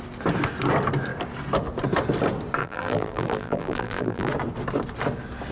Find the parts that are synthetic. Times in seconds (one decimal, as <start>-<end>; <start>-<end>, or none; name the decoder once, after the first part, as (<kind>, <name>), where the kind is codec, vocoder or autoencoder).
2.6-4.3 (vocoder, BigVGAN v2)